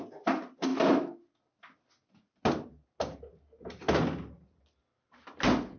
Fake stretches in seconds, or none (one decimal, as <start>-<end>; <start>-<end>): none

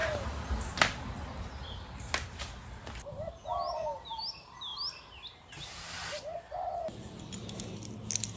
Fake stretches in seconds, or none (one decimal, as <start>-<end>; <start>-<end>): none

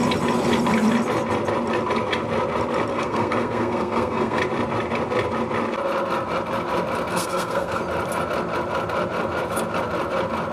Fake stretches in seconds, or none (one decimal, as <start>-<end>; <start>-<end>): 2.9-4.4; 7.1-7.8

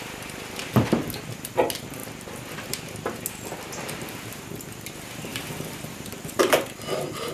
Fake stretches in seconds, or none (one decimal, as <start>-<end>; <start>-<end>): 5.3-6.4

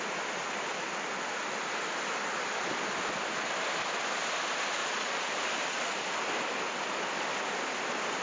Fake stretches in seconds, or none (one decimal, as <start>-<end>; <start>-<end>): 4.8-5.3

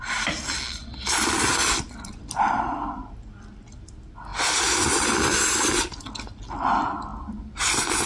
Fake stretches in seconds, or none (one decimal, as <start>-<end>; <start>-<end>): none

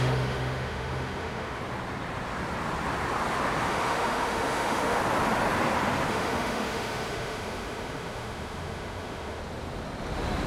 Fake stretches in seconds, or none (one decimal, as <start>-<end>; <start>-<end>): 0.0-1.6; 3.7-5.0; 6.1-9.4